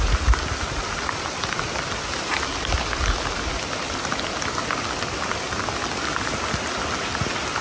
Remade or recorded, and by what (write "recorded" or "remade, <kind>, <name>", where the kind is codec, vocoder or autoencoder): recorded